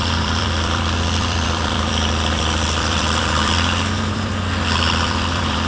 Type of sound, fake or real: fake